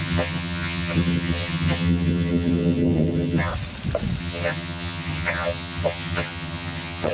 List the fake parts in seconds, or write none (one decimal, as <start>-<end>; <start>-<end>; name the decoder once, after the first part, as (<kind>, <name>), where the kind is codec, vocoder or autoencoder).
0.0-3.5 (vocoder, HiFi-GAN); 4.2-7.1